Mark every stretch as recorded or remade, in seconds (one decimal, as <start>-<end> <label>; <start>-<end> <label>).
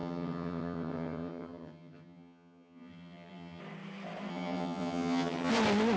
0.0-3.6 remade; 3.6-4.3 recorded; 4.3-5.5 remade; 5.5-6.0 recorded